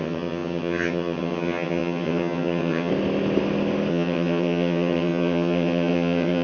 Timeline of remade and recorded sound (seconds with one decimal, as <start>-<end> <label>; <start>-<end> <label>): 0.0-2.9 remade; 2.9-3.9 recorded; 3.9-6.4 remade